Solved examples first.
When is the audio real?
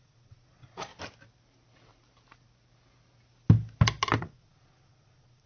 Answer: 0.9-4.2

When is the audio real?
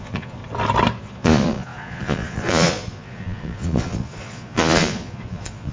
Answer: 0.4-1.0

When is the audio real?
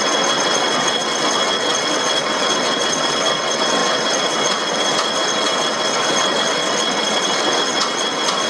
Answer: none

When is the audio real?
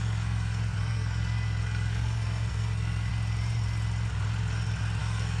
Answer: 3.1-5.0